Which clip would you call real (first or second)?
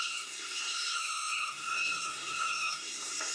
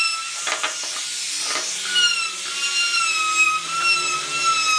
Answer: second